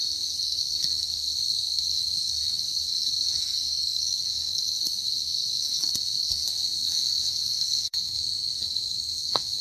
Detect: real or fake fake